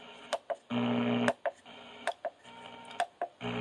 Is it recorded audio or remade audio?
recorded